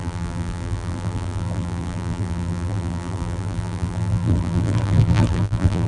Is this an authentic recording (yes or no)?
no